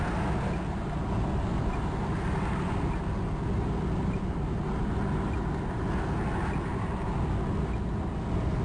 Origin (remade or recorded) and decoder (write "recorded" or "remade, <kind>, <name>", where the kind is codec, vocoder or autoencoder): recorded